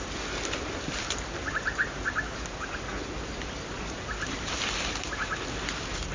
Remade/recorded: recorded